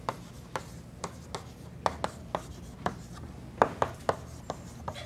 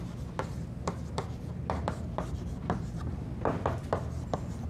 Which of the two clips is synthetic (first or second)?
second